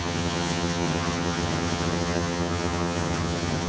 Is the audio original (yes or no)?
no